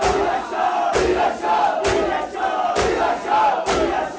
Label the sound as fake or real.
real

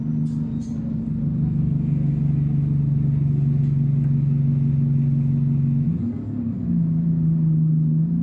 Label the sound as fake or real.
real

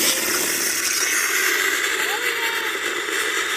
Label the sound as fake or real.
real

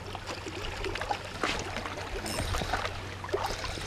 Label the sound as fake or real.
real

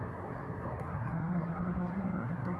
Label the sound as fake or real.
fake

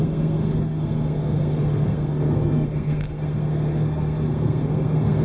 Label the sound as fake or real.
fake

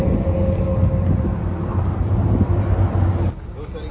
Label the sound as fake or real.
real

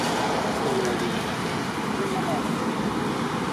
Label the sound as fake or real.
real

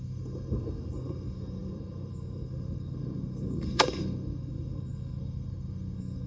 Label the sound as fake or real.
fake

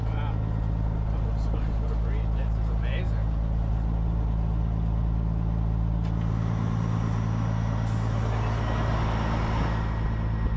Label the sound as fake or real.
real